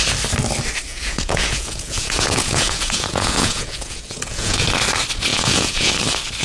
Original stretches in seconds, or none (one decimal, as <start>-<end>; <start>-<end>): 0.0-0.9; 4.7-5.3; 5.9-6.4